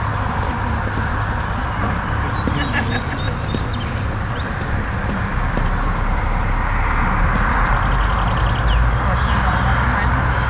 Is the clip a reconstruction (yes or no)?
no